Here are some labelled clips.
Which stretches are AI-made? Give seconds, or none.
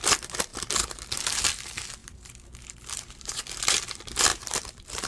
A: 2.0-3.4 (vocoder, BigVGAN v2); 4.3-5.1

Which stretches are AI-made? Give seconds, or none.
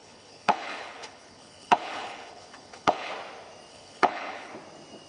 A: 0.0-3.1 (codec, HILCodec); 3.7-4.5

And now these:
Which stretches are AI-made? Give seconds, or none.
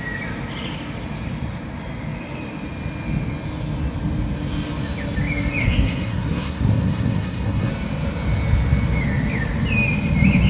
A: 5.6-7.7 (codec, SNAC)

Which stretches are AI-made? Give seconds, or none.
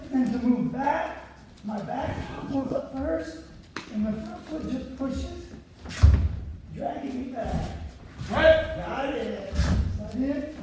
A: 2.1-2.8 (codec, SNAC)